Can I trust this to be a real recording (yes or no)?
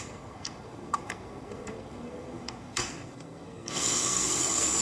no